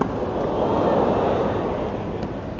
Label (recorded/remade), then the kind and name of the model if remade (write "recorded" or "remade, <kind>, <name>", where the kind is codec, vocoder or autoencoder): recorded